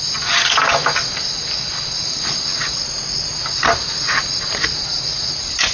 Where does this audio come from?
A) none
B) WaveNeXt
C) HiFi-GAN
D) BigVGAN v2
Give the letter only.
A